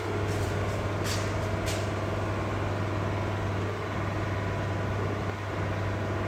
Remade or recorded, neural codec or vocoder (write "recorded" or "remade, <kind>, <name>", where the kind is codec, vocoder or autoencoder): recorded